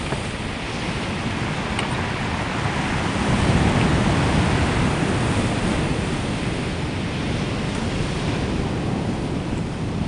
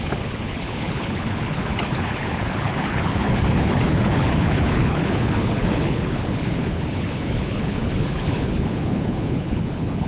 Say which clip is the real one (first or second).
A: first